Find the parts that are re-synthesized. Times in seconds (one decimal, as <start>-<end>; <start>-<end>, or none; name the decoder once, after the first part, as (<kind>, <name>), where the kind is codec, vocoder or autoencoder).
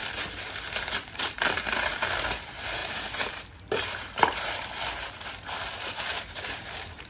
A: 0.0-7.1 (vocoder, BigVGAN v2)